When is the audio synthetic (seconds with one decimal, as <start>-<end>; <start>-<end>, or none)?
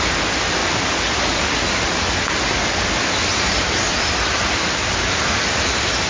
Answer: none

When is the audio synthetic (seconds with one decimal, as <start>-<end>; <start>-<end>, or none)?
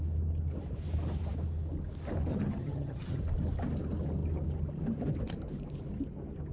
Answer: 2.3-3.2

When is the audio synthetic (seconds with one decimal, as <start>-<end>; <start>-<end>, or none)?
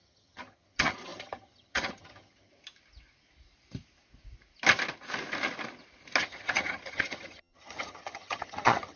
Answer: 0.0-2.5; 6.2-9.0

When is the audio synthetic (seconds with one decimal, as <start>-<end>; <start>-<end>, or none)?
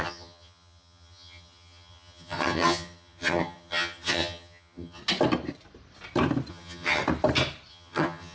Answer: 0.0-5.0; 6.5-7.0; 7.7-8.3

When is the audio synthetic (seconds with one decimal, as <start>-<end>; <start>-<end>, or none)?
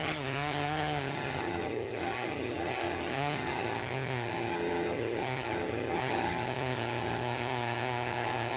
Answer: 0.0-8.6